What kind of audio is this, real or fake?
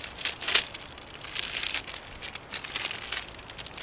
real